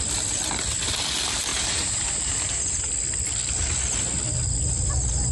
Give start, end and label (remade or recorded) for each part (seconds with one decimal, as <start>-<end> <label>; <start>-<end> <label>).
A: 0.0-1.5 recorded; 1.5-2.9 remade; 2.9-5.3 recorded